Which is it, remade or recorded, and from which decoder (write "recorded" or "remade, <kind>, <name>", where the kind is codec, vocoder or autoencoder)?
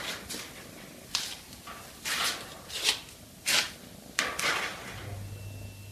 recorded